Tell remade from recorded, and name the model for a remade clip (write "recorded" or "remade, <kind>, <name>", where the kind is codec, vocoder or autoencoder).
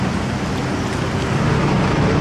recorded